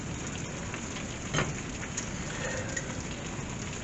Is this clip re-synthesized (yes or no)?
no